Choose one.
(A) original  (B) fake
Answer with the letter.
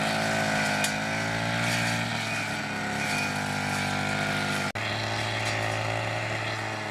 A